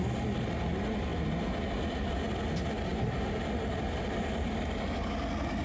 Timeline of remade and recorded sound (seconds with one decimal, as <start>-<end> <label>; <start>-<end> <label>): 0.0-5.6 recorded